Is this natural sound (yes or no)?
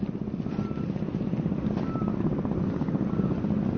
yes